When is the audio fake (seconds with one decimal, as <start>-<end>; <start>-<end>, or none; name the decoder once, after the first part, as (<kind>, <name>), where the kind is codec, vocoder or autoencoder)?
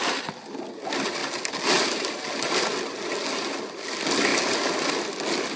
none